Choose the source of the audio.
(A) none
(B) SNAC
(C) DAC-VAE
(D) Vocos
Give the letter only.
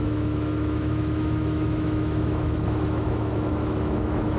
C